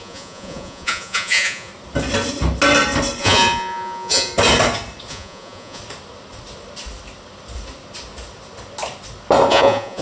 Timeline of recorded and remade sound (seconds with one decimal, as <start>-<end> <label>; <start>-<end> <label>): 0.0-1.7 remade; 1.7-3.2 recorded; 3.2-4.3 remade; 4.3-5.1 recorded; 5.1-5.8 remade; 5.8-9.5 recorded; 9.5-10.0 remade

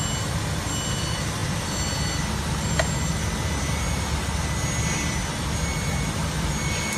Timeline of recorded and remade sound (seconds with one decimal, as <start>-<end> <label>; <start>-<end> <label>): 0.0-7.0 recorded

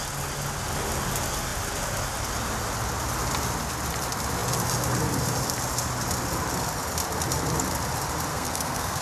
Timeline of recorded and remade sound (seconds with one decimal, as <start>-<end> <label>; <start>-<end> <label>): 0.0-8.3 recorded; 8.3-9.0 remade

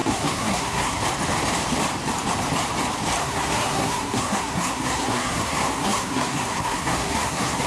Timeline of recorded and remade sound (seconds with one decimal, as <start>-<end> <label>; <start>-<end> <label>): 0.0-1.0 remade; 1.0-3.2 recorded; 3.2-7.7 remade

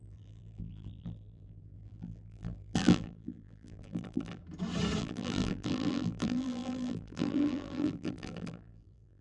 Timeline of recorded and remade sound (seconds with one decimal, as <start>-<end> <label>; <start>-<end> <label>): 0.0-4.4 remade; 4.4-5.0 recorded; 5.0-9.2 remade

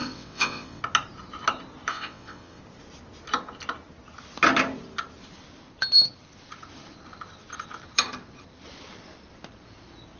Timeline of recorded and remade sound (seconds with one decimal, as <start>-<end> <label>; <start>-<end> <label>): 0.0-0.8 remade; 0.8-1.9 recorded; 1.9-2.6 remade; 2.6-10.2 recorded

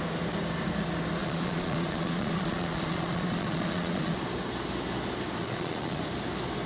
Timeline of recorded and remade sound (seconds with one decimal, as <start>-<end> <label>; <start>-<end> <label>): 0.0-1.2 recorded; 1.2-4.1 remade; 4.1-5.4 recorded; 5.4-6.0 remade; 6.0-6.7 recorded

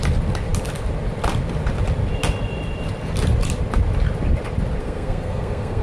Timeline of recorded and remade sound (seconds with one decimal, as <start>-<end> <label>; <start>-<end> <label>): 0.0-4.8 recorded; 4.8-5.8 remade